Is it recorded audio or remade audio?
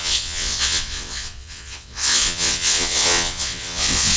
remade